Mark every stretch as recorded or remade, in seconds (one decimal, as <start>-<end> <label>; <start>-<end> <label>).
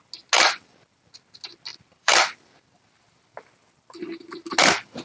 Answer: 0.0-1.7 recorded; 1.7-4.0 remade; 4.0-5.0 recorded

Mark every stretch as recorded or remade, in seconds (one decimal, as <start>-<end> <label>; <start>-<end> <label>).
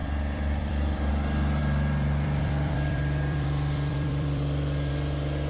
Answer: 0.0-1.1 remade; 1.1-1.6 recorded; 1.6-4.9 remade; 4.9-5.5 recorded